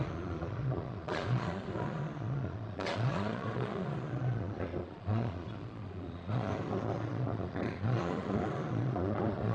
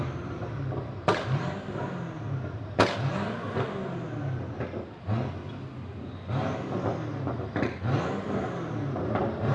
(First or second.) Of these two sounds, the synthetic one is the first